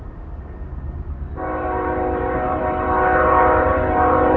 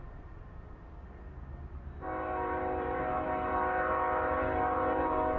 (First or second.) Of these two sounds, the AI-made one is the first